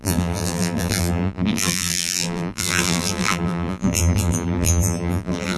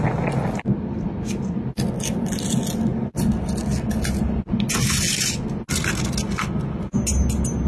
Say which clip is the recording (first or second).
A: second